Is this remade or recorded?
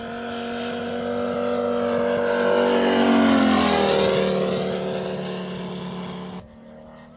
recorded